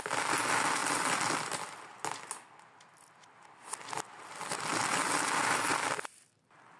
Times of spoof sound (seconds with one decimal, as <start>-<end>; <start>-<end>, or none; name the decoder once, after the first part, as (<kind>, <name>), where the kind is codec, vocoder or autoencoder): 0.8-1.6 (vocoder, BigVGAN v2); 4.7-6.8